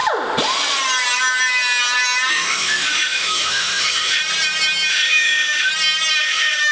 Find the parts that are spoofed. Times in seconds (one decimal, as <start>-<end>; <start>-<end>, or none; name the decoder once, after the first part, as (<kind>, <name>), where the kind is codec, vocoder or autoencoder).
2.3-4.2 (autoencoder, DAC-VAE); 4.9-5.7; 6.2-6.7